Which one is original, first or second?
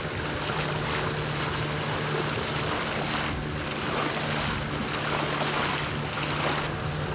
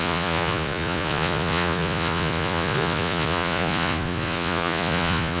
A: first